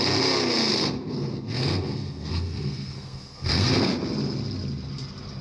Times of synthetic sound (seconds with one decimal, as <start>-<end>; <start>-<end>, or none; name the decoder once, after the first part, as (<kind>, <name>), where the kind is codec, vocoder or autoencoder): 0.7-3.9 (codec, SNAC)